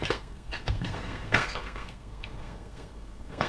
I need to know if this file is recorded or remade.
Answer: remade